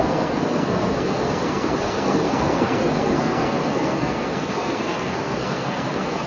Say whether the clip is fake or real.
fake